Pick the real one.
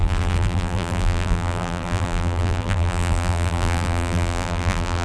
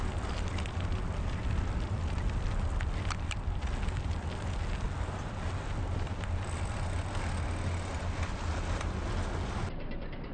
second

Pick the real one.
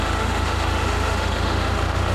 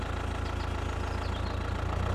second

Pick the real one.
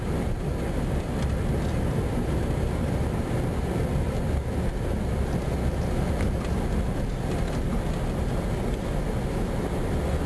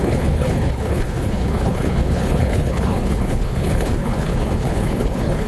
first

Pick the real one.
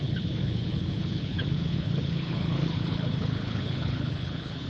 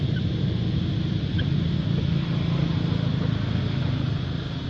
second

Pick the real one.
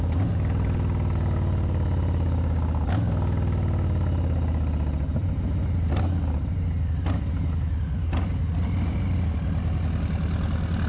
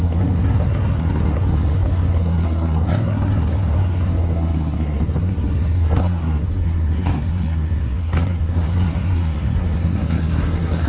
first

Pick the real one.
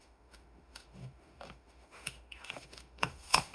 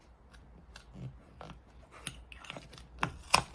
second